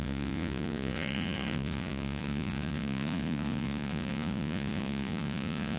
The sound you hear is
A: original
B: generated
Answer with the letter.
B